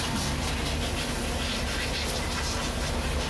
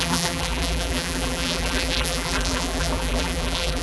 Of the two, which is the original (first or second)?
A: first